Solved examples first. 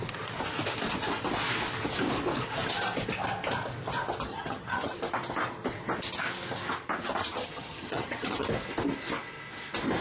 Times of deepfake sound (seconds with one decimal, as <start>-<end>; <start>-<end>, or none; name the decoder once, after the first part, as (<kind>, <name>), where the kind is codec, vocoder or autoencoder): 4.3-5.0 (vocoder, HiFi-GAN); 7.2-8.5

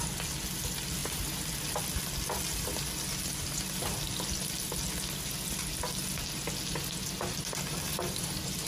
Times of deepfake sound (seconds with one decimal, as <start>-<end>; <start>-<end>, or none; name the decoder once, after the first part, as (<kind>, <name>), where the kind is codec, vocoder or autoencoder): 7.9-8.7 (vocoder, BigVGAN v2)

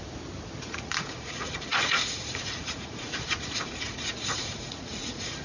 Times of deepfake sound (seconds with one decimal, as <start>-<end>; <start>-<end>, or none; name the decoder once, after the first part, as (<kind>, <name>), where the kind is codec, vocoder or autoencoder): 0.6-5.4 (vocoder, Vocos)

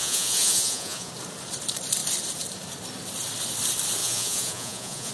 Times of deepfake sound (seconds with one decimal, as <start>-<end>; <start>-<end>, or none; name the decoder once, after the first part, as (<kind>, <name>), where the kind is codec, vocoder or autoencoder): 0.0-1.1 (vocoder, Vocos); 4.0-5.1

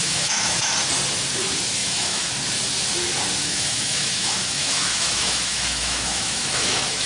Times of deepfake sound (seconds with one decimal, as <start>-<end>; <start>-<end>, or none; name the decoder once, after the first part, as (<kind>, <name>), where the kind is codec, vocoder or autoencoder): 0.0-0.7 (autoencoder, DAC-VAE); 1.8-2.3; 3.4-7.1

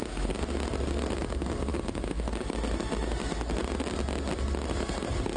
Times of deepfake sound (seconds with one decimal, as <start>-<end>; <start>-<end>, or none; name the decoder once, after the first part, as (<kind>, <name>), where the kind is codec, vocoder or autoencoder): none

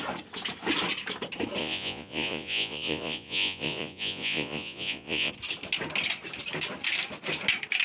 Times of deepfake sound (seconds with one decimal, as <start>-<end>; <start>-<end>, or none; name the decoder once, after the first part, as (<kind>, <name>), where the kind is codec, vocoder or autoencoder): 1.6-5.3 (vocoder, Vocos)